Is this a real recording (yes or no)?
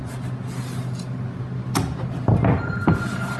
yes